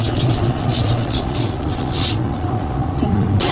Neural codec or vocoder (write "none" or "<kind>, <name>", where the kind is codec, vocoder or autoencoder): vocoder, Vocos